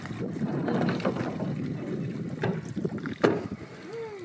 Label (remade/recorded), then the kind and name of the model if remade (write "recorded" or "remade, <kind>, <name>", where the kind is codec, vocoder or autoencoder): recorded